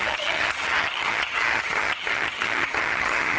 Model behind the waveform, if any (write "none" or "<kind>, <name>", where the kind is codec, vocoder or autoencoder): vocoder, HiFi-GAN